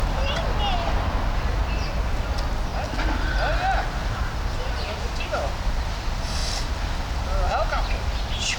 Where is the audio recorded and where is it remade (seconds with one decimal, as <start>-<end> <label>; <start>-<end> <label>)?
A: 0.0-8.6 recorded